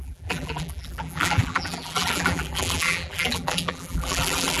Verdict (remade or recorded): remade